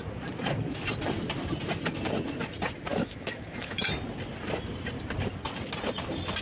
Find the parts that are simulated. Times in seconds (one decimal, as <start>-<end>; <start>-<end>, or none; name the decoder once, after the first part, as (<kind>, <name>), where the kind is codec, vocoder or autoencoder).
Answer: 2.9-3.8 (autoencoder, DAC-VAE)